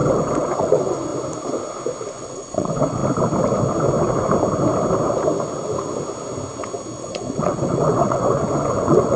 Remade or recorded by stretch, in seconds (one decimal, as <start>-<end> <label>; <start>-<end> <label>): 0.0-1.1 remade; 1.1-2.1 recorded; 2.1-3.0 remade; 3.0-7.0 recorded; 7.0-9.2 remade